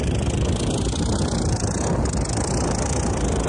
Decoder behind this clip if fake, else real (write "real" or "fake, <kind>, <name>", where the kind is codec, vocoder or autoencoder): real